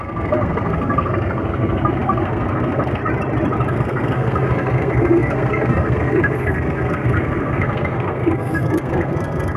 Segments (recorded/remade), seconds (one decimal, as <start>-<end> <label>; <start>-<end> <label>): 0.0-3.0 remade; 3.0-3.7 recorded; 3.7-9.6 remade